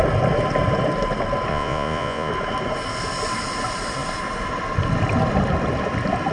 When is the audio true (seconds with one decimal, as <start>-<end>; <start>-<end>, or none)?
0.0-1.5; 2.3-6.3